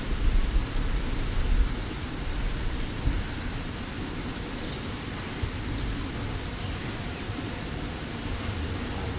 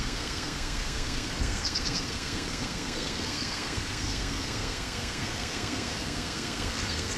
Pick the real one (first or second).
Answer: first